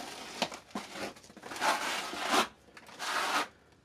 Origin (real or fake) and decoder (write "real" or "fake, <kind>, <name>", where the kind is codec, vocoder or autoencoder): real